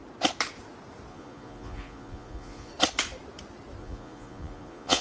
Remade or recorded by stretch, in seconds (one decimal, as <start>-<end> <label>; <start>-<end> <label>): 0.0-1.1 recorded; 1.1-2.7 remade; 2.7-3.8 recorded; 3.8-5.0 remade